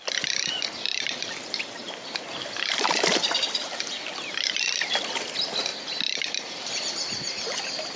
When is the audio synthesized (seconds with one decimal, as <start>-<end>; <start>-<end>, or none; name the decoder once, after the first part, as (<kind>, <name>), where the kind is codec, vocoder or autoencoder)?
none